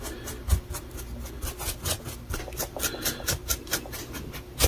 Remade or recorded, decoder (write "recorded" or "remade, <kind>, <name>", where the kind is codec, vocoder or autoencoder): recorded